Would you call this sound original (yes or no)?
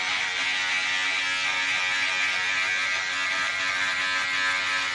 yes